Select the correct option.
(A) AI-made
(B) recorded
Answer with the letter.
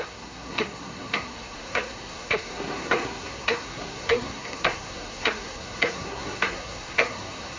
A